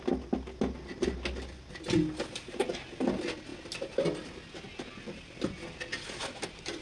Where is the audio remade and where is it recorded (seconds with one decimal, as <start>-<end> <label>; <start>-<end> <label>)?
0.0-6.8 recorded